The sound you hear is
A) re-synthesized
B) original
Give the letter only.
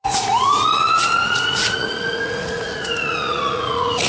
A